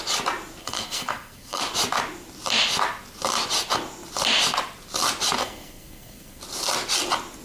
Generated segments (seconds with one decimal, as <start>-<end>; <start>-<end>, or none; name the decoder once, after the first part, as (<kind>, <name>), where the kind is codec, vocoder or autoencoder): 0.6-1.6 (codec, SNAC); 5.4-6.4